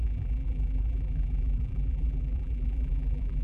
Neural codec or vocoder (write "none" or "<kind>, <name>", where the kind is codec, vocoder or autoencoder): vocoder, BigVGAN v2